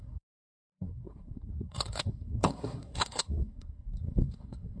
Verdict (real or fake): fake